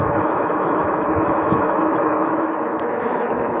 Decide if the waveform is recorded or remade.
remade